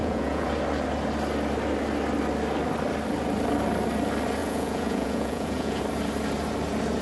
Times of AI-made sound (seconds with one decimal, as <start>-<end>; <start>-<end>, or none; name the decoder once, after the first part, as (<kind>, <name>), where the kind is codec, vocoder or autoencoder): 0.0-0.5 (vocoder, Vocos); 4.4-5.8